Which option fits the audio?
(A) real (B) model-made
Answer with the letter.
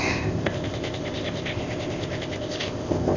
B